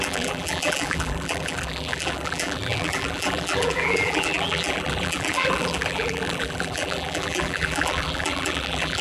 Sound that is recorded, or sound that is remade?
remade